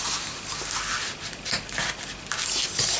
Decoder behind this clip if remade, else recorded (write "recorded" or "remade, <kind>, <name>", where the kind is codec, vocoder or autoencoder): recorded